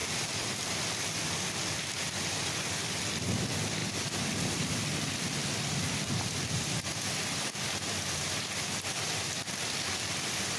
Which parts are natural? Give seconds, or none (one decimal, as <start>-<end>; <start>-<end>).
3.0-3.8; 8.6-10.6